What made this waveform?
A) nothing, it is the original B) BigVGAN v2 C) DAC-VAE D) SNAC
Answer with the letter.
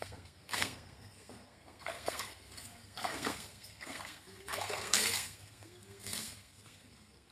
D